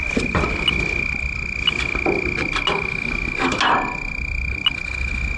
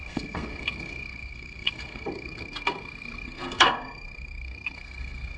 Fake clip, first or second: second